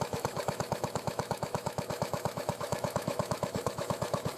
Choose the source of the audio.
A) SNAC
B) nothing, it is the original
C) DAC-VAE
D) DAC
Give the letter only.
C